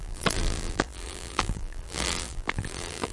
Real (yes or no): no